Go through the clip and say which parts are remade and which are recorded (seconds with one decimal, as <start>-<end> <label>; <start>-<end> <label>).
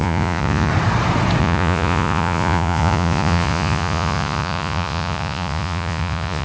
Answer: 0.0-0.7 remade; 0.7-1.4 recorded; 1.4-6.4 remade